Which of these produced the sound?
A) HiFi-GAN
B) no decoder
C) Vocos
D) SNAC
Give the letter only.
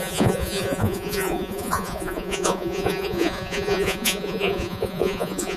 C